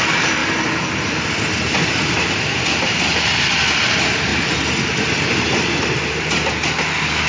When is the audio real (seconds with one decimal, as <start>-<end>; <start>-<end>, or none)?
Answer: 0.0-7.3